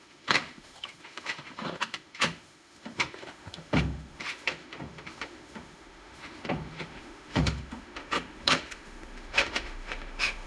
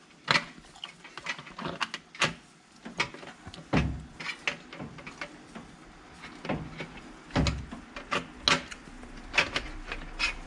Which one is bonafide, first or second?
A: second